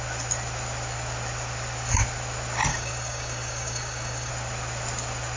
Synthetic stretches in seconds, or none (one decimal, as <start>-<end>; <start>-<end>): 2.7-4.3